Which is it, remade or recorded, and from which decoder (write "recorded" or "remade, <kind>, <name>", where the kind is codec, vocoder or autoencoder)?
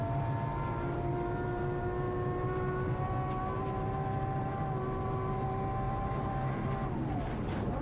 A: remade, vocoder, BigVGAN v2